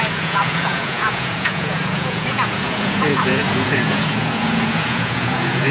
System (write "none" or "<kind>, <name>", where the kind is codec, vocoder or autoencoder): vocoder, Vocos